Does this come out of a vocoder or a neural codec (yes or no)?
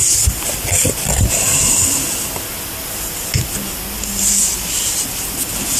no